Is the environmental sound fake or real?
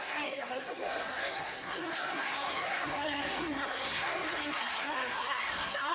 fake